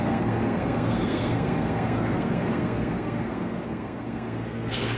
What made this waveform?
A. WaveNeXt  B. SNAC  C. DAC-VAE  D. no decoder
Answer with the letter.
B